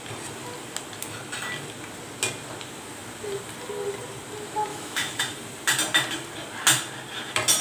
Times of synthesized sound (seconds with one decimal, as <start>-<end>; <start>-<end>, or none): 4.7-5.2